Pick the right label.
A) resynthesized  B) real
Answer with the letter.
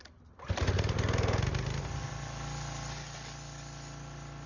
B